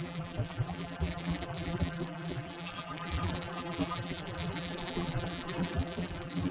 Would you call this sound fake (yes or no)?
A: yes